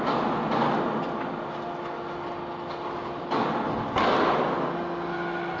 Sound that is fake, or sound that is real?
real